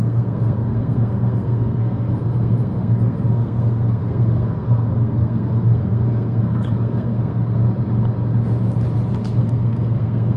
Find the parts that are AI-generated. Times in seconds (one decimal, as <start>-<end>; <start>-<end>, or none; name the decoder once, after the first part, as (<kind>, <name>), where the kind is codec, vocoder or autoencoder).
0.0-7.6 (codec, SNAC); 9.4-10.4